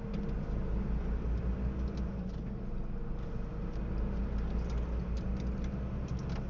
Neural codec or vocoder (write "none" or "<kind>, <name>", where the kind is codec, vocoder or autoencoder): none